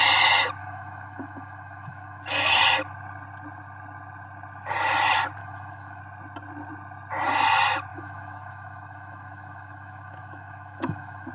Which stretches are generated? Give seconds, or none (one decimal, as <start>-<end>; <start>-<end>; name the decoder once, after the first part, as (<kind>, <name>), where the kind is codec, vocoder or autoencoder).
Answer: 0.6-2.6 (autoencoder, DAC-VAE); 5.4-6.0; 7.9-11.3